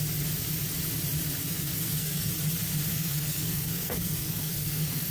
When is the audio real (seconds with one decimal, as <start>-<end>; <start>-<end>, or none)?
0.0-1.4; 2.3-2.9